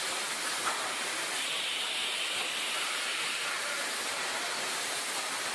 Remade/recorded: recorded